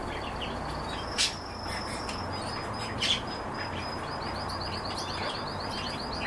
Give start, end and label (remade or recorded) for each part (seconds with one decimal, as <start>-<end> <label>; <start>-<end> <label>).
0.0-6.3 recorded